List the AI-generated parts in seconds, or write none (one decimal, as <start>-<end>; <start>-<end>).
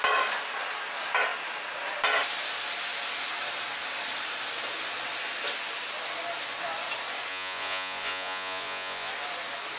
7.3-9.1